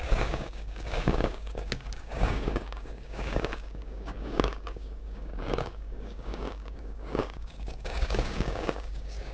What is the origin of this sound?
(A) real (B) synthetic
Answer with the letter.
B